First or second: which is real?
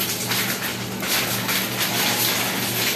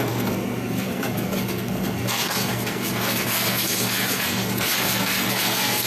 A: first